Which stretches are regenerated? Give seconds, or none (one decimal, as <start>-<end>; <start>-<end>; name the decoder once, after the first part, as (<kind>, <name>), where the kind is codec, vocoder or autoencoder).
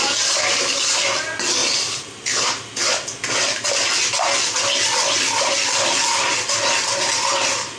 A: none